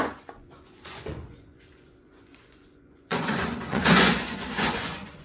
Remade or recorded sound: remade